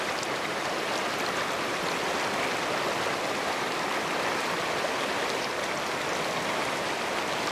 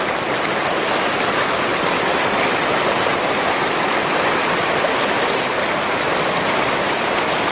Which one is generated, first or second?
second